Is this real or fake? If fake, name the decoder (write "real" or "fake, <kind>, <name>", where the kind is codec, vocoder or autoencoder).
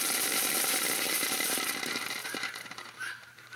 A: fake, vocoder, BigVGAN v2